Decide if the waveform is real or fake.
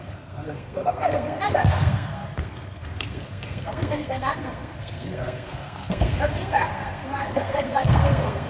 fake